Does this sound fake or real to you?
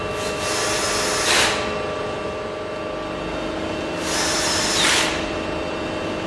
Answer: real